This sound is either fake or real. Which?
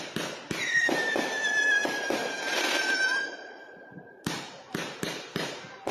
fake